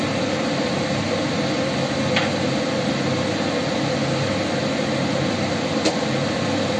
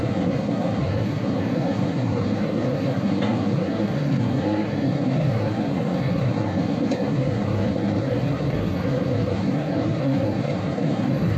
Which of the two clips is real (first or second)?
first